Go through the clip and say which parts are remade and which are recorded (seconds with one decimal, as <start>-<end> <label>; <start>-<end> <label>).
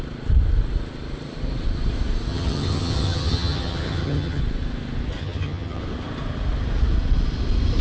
0.0-2.3 recorded; 2.3-4.4 remade; 4.4-5.2 recorded; 5.2-5.8 remade; 5.8-7.8 recorded